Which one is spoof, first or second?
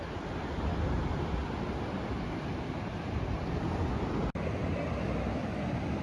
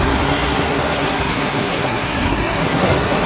second